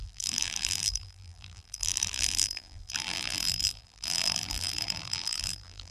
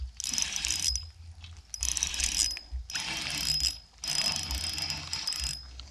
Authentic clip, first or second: second